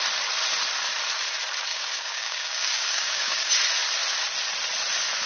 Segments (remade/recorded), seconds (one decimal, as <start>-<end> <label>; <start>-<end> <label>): 0.0-1.7 recorded; 1.7-3.5 remade; 3.5-5.3 recorded